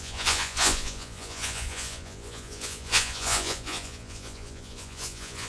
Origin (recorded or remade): remade